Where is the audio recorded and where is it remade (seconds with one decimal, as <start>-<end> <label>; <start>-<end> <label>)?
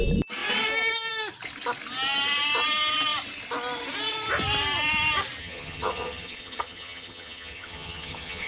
0.0-5.4 recorded; 5.4-8.5 remade